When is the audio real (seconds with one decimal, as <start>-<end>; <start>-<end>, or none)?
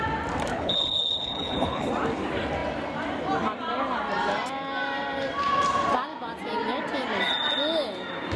0.0-0.5; 1.9-8.4